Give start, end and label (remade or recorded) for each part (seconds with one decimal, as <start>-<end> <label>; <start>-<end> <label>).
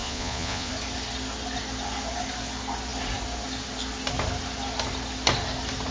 0.0-0.7 remade; 0.7-5.9 recorded